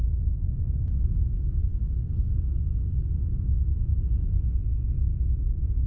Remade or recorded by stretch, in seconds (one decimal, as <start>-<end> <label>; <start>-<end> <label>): 0.0-1.7 remade; 1.7-5.2 recorded; 5.2-5.9 remade